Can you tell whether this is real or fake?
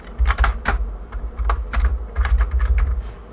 fake